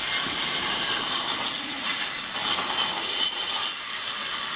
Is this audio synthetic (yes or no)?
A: no